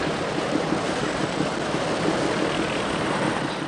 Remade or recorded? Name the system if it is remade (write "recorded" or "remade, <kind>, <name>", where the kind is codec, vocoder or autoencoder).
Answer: remade, vocoder, BigVGAN v2